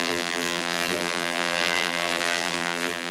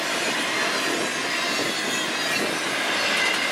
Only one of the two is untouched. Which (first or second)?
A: second